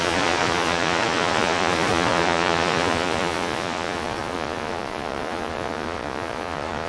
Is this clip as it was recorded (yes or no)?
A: no